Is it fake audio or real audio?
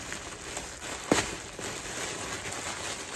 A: real